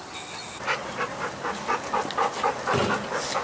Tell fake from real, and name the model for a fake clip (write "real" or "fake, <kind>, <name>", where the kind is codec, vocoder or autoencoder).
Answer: real